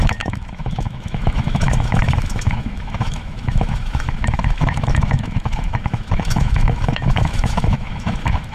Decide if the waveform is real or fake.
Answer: fake